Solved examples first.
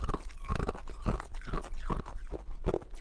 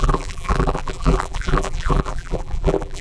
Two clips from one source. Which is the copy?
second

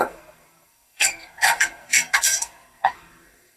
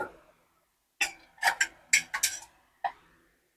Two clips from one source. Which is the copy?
first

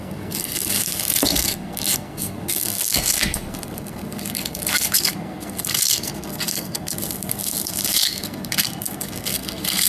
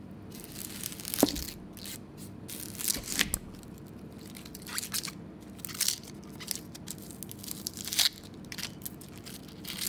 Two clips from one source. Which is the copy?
first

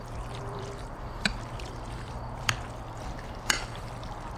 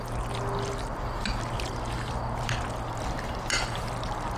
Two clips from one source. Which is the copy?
first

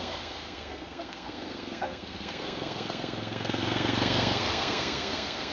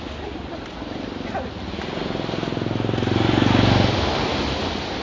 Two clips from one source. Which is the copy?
first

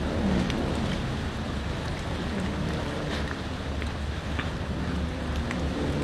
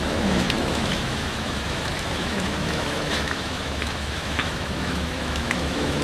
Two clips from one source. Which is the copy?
second